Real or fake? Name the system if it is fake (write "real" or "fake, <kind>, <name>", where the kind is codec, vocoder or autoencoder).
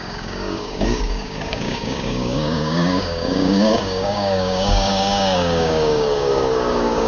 fake, codec, DAC